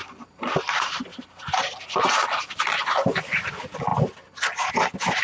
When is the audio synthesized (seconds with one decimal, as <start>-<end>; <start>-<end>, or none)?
none